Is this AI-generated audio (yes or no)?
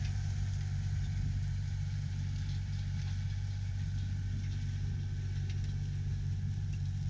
yes